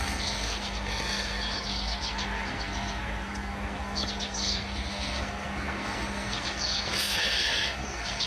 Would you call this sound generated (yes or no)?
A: yes